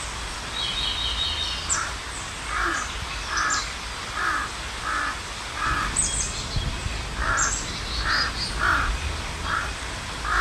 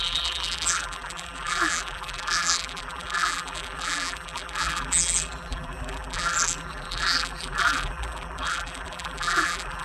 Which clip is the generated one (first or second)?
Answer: second